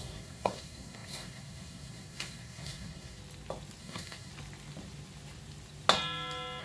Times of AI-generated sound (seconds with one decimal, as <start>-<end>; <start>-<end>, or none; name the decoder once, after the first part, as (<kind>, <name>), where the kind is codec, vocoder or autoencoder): 0.0-3.2 (codec, SNAC); 3.8-4.3